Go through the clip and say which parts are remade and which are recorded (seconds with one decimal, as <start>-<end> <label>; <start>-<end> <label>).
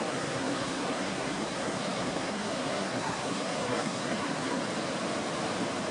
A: 0.0-4.6 remade; 4.6-5.9 recorded